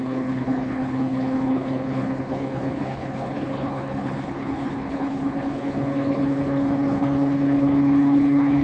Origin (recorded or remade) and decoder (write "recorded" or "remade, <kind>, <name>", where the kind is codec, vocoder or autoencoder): remade, codec, HILCodec